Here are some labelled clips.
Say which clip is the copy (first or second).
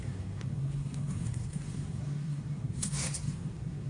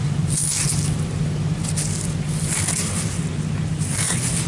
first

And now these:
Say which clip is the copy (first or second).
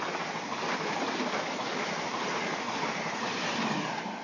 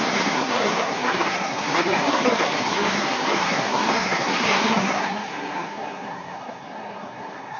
second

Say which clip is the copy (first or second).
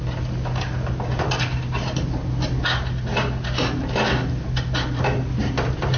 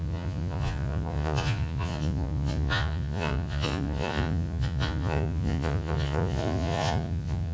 second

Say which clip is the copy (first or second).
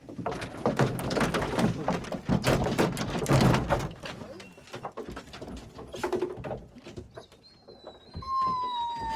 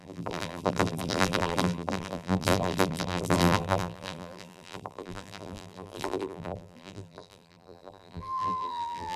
second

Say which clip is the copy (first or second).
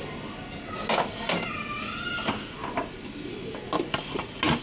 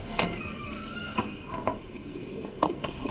second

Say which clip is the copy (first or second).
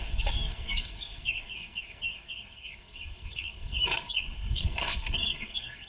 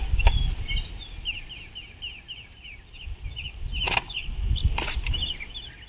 first